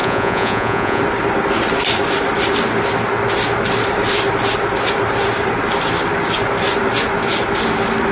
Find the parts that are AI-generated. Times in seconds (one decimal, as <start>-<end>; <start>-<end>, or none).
0.0-1.0